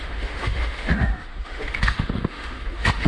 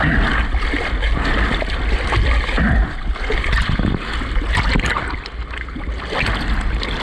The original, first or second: second